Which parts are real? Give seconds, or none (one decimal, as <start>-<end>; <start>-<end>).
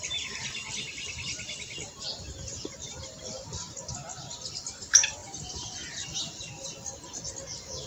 0.0-7.9